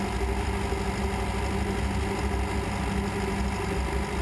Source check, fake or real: real